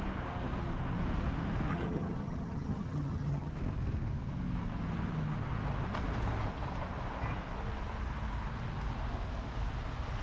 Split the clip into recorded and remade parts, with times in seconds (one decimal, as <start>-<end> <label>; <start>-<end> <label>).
0.0-1.7 recorded; 1.7-3.5 remade; 3.5-10.2 recorded